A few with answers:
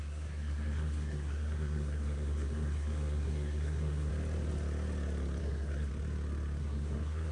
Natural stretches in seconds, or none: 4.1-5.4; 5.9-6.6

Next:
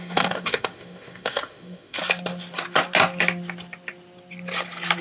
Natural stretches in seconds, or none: 2.0-5.0

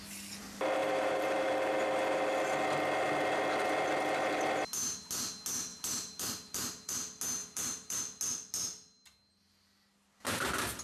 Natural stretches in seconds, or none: 0.0-0.8; 1.5-5.7; 6.9-7.4; 8.0-10.8

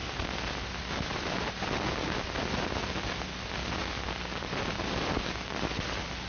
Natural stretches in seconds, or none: 0.0-6.3